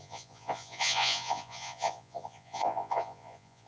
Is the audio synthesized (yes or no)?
yes